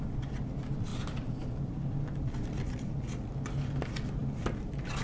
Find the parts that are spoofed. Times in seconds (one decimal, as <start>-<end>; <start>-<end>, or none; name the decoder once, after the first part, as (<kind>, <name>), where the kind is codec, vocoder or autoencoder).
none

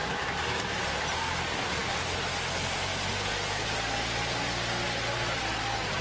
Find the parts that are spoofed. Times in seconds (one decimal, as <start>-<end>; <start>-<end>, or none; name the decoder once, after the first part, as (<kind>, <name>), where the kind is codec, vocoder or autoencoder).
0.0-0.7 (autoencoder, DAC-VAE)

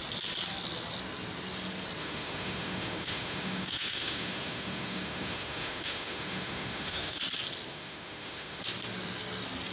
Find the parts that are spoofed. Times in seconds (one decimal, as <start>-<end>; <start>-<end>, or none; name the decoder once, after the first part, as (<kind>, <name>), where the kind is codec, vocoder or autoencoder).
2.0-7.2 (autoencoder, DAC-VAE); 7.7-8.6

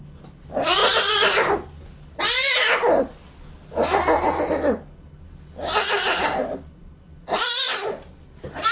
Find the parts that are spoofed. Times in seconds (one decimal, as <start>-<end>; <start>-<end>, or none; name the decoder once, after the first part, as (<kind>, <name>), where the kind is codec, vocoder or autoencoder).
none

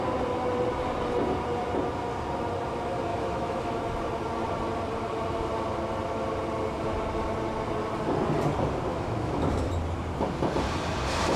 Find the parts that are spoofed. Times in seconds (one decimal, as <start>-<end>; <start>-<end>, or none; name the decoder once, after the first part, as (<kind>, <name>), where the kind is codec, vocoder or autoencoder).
3.1-3.8 (autoencoder, DAC-VAE); 8.9-9.7

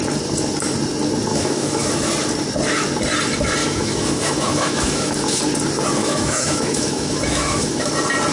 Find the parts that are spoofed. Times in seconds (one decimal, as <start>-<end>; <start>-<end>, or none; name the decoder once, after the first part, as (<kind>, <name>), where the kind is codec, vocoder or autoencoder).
1.3-2.1 (autoencoder, DAC-VAE); 3.6-5.4; 6.0-7.9